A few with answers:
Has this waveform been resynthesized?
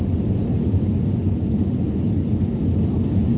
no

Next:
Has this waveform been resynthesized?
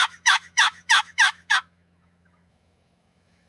yes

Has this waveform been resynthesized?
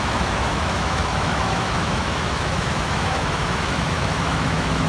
yes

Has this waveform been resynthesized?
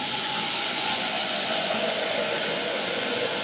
yes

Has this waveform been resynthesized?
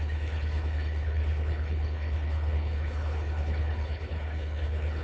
yes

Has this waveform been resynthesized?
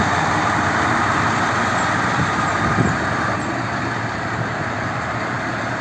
yes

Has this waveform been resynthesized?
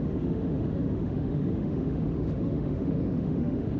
yes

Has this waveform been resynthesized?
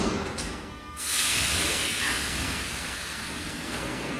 yes